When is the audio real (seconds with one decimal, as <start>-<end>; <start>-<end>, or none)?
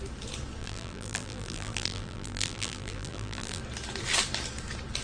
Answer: 0.0-0.6; 3.6-5.0